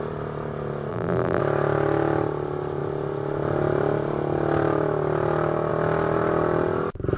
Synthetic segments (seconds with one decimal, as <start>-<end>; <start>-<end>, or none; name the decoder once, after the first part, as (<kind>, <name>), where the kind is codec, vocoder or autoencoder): 0.9-1.4 (vocoder, BigVGAN v2)